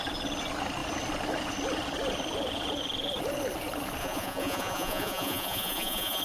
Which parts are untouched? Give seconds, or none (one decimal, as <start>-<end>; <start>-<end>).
0.0-4.0